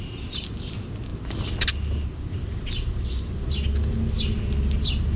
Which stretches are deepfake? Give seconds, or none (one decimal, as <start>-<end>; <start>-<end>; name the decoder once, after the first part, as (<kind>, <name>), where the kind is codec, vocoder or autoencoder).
none